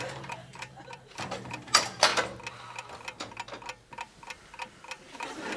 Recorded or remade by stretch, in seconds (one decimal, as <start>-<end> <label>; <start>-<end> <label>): 0.0-2.1 remade; 2.1-5.6 recorded

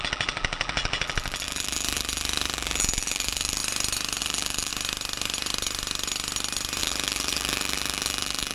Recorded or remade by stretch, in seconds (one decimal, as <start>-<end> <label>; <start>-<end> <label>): 0.0-3.6 remade; 3.6-4.2 recorded; 4.2-4.7 remade; 4.7-6.8 recorded; 6.8-8.5 remade

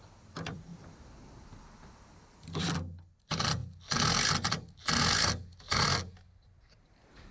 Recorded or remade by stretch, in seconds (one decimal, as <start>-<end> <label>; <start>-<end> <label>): 0.0-0.7 recorded; 0.7-2.6 remade; 2.6-7.3 recorded

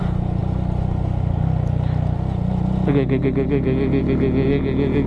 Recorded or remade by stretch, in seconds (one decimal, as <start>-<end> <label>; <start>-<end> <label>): 0.0-5.1 recorded